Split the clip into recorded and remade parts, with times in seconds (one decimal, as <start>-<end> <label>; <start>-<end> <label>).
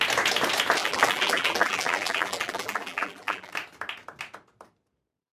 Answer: 0.0-0.8 recorded; 0.8-3.5 remade; 3.5-5.3 recorded